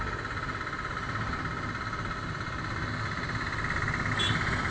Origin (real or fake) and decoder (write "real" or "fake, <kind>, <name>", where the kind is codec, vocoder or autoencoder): real